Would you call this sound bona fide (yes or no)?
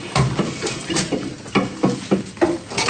yes